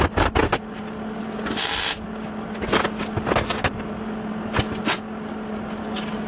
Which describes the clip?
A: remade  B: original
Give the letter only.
B